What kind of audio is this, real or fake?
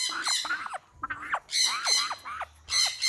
real